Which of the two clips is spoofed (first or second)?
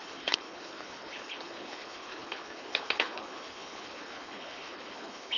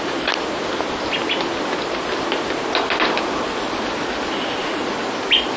first